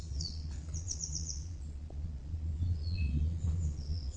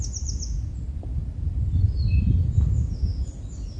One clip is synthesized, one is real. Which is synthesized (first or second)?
first